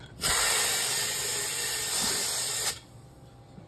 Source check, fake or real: fake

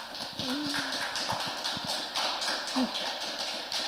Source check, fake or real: real